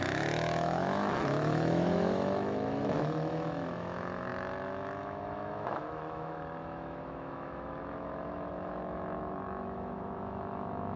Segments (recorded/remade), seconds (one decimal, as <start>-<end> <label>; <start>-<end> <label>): 0.0-11.0 remade